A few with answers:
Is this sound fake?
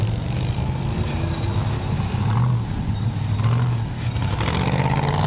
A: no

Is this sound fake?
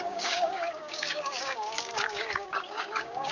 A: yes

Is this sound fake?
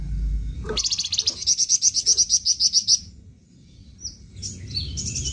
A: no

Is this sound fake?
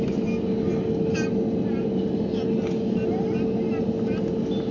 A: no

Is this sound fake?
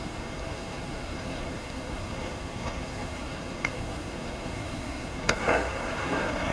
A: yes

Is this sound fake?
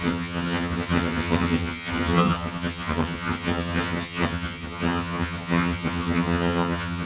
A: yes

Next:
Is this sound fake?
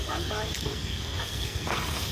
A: yes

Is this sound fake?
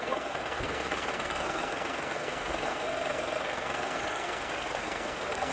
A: yes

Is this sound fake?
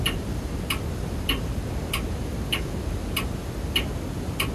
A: no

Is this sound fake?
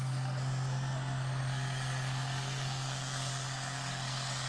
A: yes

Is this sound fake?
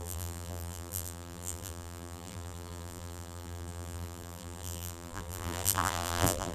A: yes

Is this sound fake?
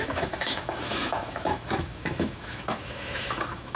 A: yes